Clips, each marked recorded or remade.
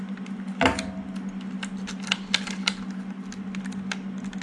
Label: recorded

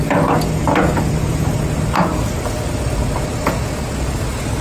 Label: recorded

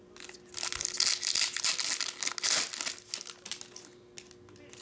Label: recorded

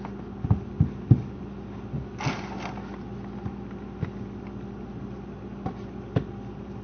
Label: recorded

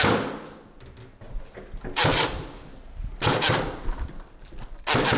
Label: recorded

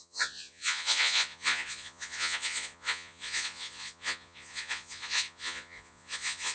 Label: remade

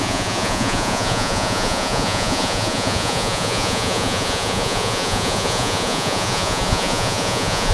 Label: remade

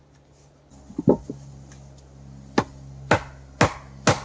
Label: recorded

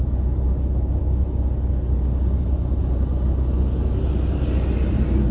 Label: recorded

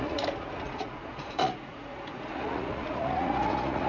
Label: remade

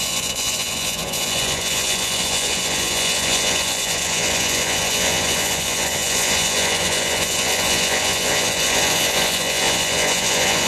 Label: remade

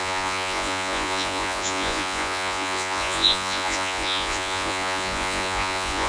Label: remade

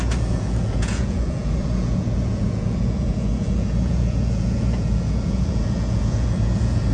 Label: remade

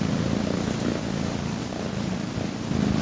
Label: recorded